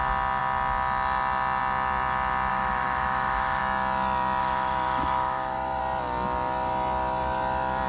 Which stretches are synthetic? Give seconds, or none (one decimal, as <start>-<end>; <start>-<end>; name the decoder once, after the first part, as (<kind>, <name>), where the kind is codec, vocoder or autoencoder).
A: 2.5-3.6 (autoencoder, DAC-VAE); 4.4-5.8